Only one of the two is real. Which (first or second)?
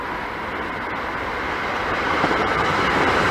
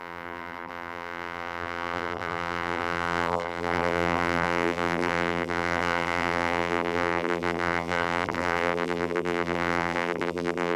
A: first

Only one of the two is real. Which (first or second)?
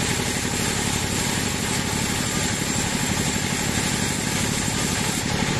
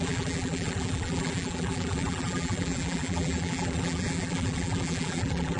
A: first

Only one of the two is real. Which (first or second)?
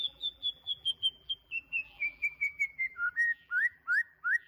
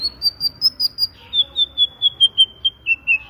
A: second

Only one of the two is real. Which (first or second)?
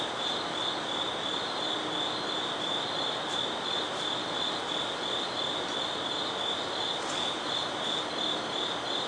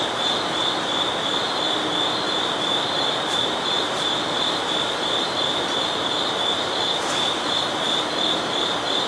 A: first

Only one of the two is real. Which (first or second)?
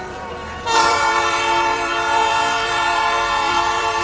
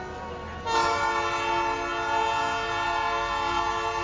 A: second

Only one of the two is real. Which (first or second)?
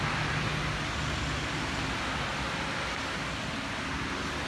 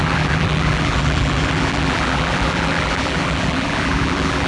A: first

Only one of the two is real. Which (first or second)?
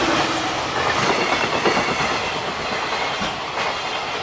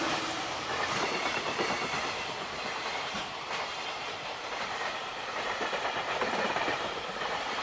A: first